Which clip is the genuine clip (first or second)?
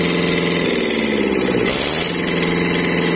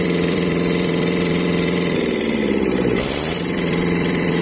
first